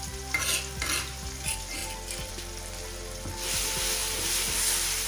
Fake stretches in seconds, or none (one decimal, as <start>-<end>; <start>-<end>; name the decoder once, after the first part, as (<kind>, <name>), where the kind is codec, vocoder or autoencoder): none